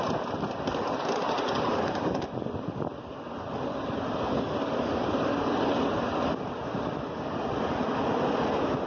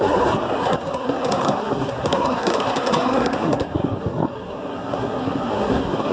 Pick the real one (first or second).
first